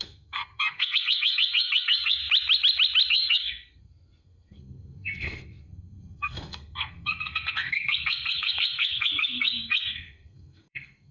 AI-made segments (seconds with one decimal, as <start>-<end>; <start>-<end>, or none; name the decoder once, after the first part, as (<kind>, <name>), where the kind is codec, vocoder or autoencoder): 0.0-2.2 (codec, SNAC); 3.1-11.1